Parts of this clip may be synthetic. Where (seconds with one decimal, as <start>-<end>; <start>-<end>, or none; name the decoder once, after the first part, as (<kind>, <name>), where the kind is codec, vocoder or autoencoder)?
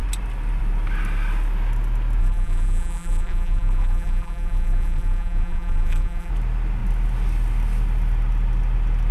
2.2-6.3 (vocoder, BigVGAN v2)